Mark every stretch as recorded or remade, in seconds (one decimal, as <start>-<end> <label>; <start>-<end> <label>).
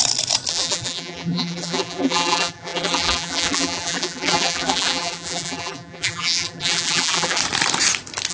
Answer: 0.0-0.5 recorded; 0.5-7.4 remade; 7.4-8.3 recorded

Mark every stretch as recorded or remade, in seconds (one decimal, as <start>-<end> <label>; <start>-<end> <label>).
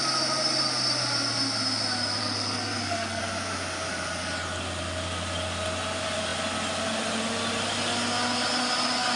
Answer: 0.0-2.2 recorded; 2.2-3.2 remade; 3.2-9.2 recorded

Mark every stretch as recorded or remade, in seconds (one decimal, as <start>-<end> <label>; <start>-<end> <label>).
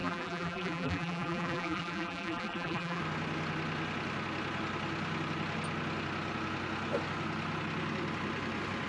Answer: 0.0-3.0 remade; 3.0-8.9 recorded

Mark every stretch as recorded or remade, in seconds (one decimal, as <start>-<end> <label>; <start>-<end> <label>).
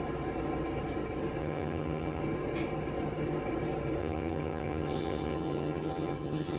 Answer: 0.0-1.4 recorded; 1.4-2.2 remade; 2.2-4.0 recorded; 4.0-6.6 remade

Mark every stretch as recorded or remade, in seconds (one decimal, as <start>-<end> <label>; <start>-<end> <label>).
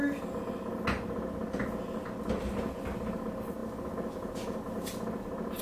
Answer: 0.0-5.6 recorded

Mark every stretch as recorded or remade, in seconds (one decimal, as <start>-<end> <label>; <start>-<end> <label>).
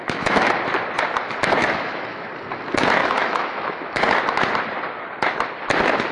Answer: 0.0-0.5 remade; 0.5-1.6 recorded; 1.6-2.3 remade; 2.3-3.0 recorded; 3.0-4.0 remade; 4.0-6.1 recorded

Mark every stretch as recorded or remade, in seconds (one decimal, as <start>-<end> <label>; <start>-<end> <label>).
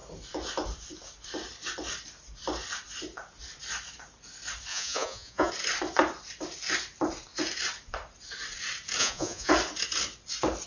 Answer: 0.0-4.7 recorded; 4.7-5.5 remade; 5.5-9.0 recorded; 9.0-9.5 remade; 9.5-10.7 recorded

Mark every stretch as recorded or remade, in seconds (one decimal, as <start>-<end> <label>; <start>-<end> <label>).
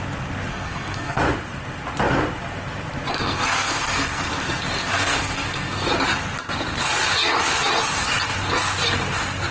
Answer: 0.0-0.5 recorded; 0.5-1.2 remade; 1.2-3.1 recorded; 3.1-5.9 remade; 5.9-9.5 recorded